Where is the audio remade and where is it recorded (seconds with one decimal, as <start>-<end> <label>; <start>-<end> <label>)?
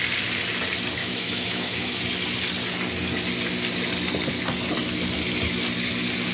0.0-1.0 recorded; 1.0-2.0 remade; 2.0-6.3 recorded